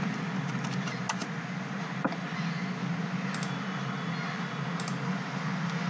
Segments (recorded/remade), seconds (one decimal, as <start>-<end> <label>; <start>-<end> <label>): 0.0-5.9 recorded